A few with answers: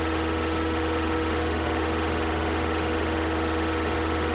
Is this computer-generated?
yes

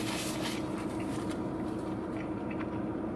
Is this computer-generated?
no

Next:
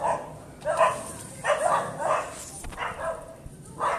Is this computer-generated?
no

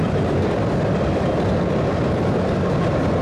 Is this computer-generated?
no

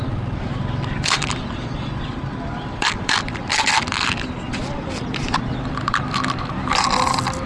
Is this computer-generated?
yes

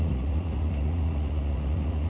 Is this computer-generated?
yes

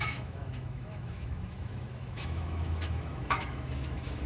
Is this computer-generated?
yes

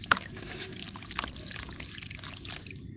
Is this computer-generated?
yes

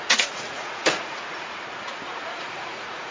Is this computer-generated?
yes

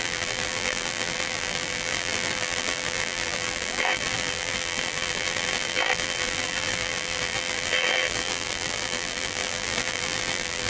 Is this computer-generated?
yes